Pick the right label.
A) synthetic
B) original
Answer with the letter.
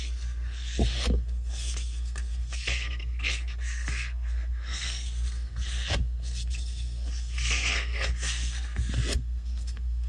A